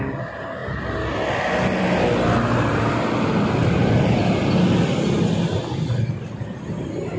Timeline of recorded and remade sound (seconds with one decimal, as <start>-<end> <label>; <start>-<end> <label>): 0.0-7.2 recorded